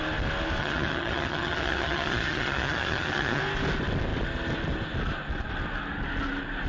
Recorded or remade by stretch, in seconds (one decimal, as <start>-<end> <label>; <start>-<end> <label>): 0.0-0.6 recorded; 0.6-3.4 remade; 3.4-6.7 recorded